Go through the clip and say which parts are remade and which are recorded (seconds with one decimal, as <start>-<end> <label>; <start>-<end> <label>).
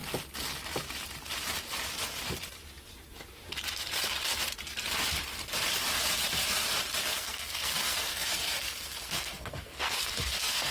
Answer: 0.0-7.0 recorded; 7.0-10.7 remade